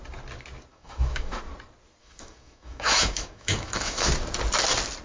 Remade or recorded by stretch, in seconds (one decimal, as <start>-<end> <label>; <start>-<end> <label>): 0.0-0.7 recorded; 0.7-1.4 remade; 1.4-2.0 recorded; 2.0-4.1 remade; 4.1-5.0 recorded